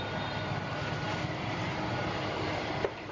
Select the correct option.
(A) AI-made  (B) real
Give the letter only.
B